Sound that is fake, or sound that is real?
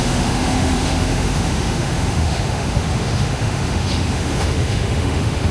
fake